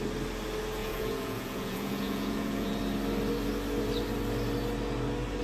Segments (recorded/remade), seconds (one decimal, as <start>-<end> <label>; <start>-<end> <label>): 0.0-0.8 recorded; 0.8-2.8 remade; 2.8-5.4 recorded